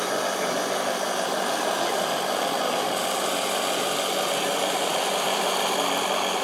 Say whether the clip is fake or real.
real